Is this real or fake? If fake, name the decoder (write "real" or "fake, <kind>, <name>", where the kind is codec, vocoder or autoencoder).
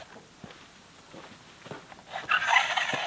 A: real